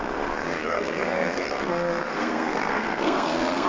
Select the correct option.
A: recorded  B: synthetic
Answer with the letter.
B